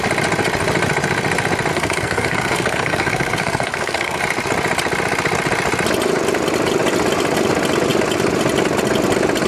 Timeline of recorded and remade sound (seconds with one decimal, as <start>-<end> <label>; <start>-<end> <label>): 0.0-1.7 recorded; 1.7-4.2 remade; 4.2-9.5 recorded